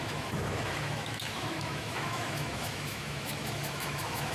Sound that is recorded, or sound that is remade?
remade